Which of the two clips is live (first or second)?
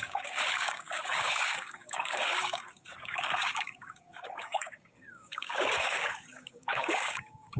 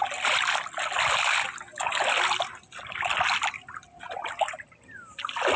second